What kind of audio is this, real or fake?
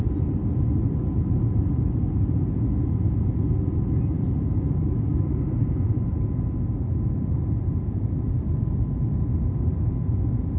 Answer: real